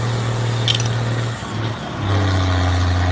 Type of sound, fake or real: real